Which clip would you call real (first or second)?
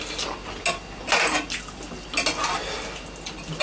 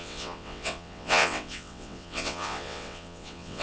first